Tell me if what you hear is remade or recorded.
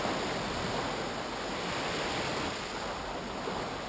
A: recorded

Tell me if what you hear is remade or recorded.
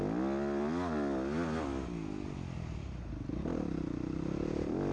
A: recorded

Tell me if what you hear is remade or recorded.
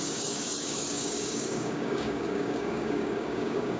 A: remade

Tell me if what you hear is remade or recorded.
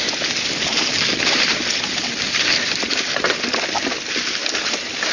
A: recorded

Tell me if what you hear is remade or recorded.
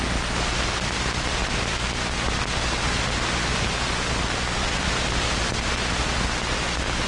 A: recorded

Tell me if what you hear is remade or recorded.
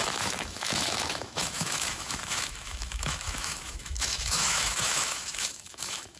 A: remade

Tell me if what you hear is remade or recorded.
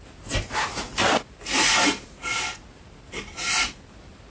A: recorded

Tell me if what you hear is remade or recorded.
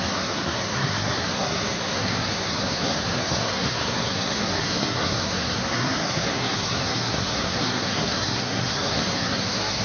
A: remade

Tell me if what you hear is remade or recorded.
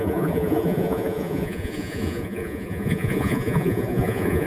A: remade